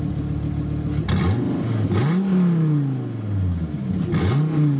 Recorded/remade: recorded